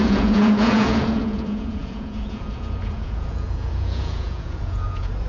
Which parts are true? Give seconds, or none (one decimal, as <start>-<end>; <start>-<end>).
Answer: none